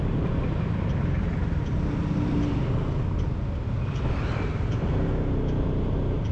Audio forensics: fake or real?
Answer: real